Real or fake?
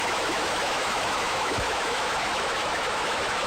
fake